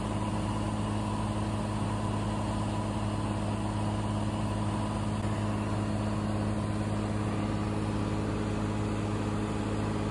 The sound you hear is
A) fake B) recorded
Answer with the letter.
B